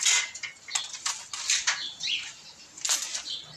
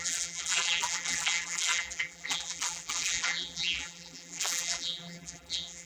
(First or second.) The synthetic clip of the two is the second